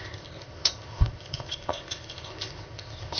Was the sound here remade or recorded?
remade